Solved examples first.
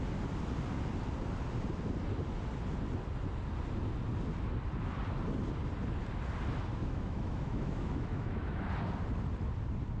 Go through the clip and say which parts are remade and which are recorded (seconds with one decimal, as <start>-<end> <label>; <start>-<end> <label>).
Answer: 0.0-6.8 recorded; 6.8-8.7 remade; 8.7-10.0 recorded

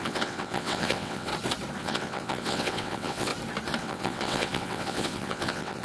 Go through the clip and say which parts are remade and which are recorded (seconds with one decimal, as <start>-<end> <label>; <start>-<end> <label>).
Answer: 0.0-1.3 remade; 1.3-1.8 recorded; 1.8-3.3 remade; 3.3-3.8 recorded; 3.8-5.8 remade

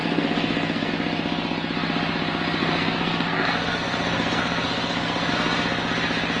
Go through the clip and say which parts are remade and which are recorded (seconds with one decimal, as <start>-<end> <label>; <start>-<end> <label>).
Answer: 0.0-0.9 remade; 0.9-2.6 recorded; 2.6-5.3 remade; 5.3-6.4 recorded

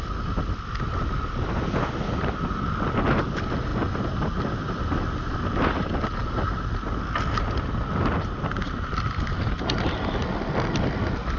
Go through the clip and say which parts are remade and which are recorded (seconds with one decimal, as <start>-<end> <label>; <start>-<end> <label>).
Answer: 0.0-11.4 recorded